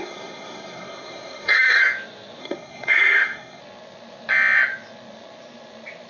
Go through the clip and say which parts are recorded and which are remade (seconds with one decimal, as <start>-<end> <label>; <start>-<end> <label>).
0.0-1.8 remade; 1.8-2.4 recorded; 2.4-3.6 remade; 3.6-6.1 recorded